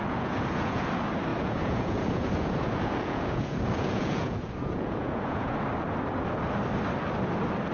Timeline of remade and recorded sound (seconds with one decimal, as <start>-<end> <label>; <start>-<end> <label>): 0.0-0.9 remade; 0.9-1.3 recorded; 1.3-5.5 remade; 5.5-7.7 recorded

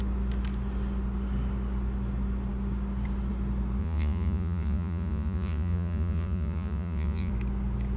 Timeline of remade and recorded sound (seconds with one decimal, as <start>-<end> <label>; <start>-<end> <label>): 0.0-3.8 recorded; 3.8-7.3 remade; 7.3-8.0 recorded

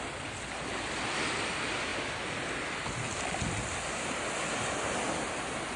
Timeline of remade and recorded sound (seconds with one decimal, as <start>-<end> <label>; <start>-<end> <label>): 0.0-5.8 recorded

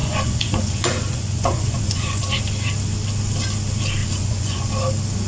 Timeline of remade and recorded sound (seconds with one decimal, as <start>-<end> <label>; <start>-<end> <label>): 0.0-2.4 remade; 2.4-4.0 recorded; 4.0-4.7 remade; 4.7-5.3 recorded

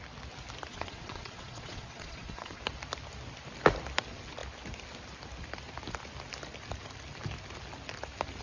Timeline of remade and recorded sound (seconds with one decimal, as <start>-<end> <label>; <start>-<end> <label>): 0.0-0.7 recorded; 0.7-2.6 remade; 2.6-8.4 recorded

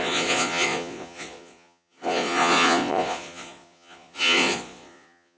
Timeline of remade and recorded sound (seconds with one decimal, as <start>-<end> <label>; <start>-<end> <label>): 0.0-5.4 remade